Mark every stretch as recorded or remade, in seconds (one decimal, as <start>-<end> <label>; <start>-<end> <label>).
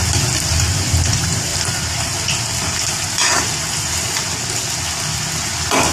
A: 0.0-5.9 recorded